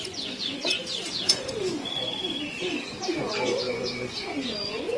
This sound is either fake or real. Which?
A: fake